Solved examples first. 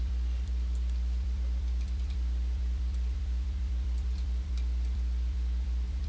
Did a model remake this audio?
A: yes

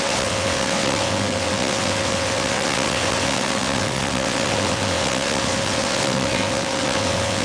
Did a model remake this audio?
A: yes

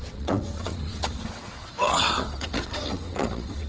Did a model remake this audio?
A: yes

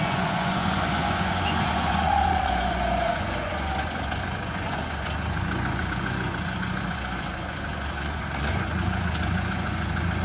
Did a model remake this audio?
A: yes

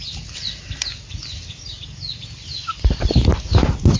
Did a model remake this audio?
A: no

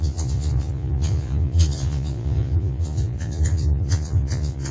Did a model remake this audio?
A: yes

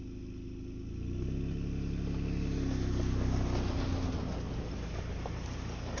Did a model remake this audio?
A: no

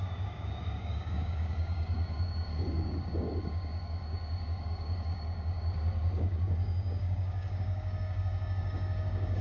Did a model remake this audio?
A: yes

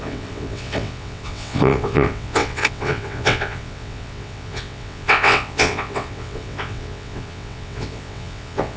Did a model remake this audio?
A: yes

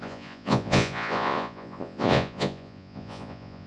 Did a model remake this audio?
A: yes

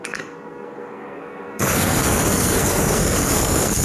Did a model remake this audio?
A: yes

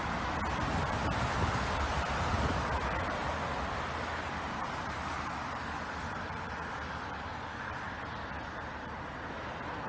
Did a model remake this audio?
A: yes